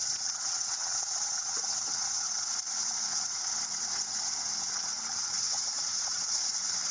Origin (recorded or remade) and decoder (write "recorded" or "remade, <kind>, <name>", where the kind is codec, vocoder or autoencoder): remade, vocoder, WaveNeXt